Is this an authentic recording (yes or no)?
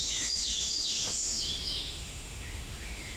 no